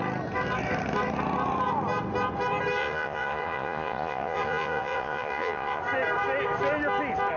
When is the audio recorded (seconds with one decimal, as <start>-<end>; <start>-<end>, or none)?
0.0-2.8; 5.8-7.4